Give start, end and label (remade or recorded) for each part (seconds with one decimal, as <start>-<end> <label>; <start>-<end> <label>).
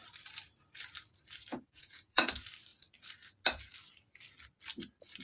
0.0-1.5 recorded; 1.5-2.3 remade; 2.3-5.2 recorded